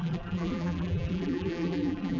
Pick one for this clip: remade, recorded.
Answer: remade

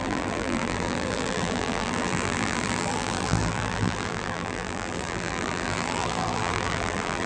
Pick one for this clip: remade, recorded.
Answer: remade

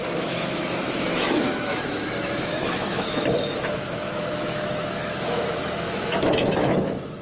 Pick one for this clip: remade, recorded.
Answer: remade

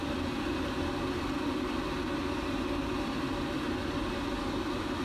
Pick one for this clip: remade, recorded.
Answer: recorded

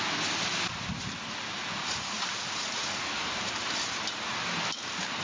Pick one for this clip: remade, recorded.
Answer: recorded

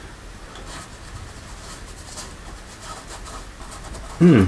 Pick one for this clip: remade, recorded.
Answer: recorded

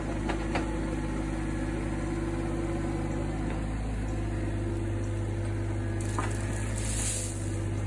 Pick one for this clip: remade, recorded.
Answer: recorded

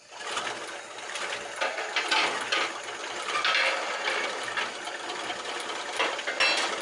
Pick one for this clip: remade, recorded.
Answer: recorded